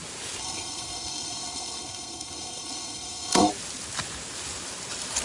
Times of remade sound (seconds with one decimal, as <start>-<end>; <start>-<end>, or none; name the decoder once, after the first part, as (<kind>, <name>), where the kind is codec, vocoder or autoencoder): 0.4-3.5 (codec, SNAC)